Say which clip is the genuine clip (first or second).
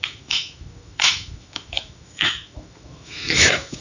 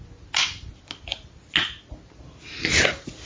second